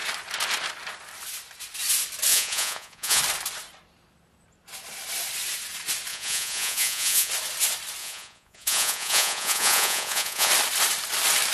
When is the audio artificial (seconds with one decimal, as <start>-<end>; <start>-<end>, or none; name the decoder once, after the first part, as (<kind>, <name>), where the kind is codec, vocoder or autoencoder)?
2.3-3.2 (vocoder, Vocos); 6.1-7.3; 8.0-10.5